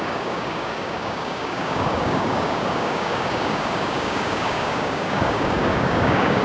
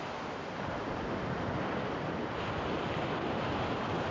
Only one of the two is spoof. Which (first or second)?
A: first